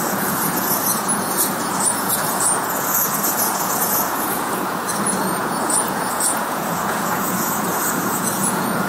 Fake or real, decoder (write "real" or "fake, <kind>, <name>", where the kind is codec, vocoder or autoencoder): fake, vocoder, Vocos